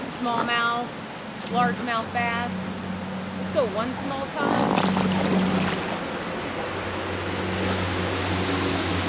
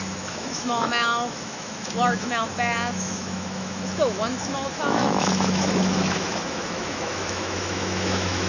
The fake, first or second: second